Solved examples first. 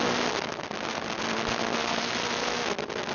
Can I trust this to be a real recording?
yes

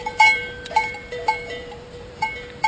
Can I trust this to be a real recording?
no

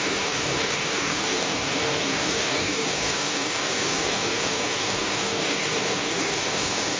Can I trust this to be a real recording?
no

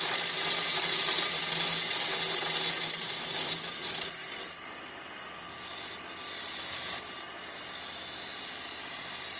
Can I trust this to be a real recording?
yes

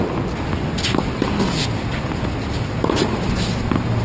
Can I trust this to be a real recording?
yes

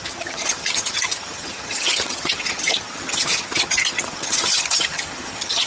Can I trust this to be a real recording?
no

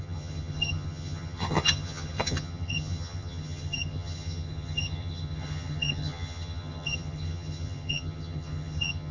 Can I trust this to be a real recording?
no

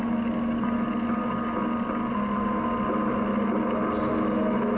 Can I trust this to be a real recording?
yes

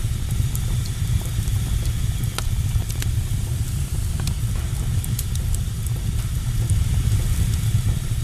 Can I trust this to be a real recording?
no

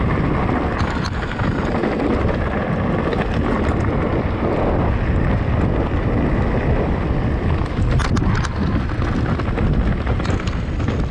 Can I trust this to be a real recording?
yes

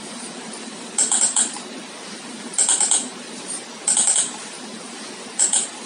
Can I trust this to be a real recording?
yes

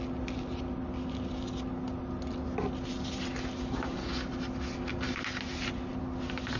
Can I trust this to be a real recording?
yes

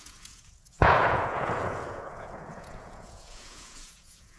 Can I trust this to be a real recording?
no